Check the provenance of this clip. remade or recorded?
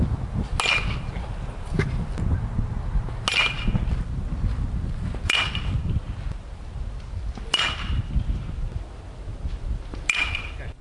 recorded